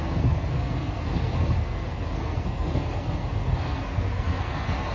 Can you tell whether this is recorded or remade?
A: remade